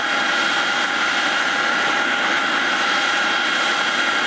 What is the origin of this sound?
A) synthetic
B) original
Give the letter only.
B